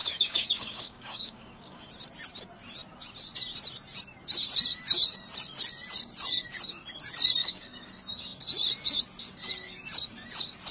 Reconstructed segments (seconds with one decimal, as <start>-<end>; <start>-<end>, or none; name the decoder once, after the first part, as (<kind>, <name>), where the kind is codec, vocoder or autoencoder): 0.0-1.9 (codec, DAC); 7.4-7.9